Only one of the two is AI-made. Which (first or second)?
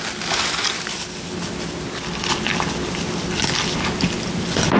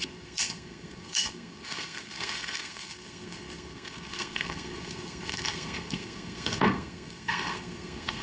second